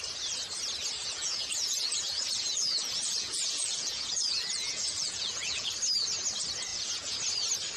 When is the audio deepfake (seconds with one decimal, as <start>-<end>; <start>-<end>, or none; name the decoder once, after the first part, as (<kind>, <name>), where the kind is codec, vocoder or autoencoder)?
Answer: 1.0-5.7 (vocoder, Vocos); 6.7-7.2

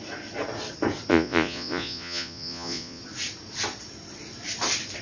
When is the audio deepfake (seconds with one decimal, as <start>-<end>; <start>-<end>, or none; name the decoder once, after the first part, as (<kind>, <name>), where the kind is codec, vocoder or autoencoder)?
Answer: 1.1-3.0 (vocoder, Vocos)